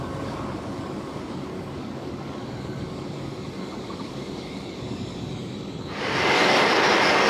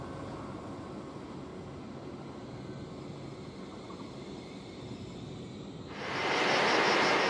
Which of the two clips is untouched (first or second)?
second